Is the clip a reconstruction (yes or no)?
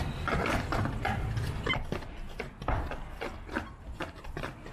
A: no